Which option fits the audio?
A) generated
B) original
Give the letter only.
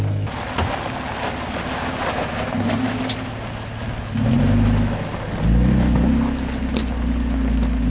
B